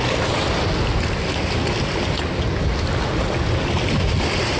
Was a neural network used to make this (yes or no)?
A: no